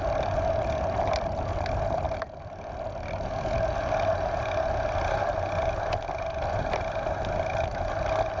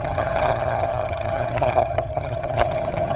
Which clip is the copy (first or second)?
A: second